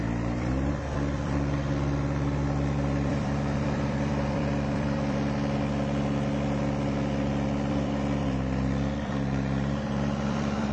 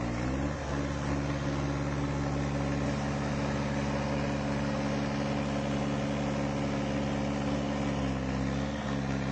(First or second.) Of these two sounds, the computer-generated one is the first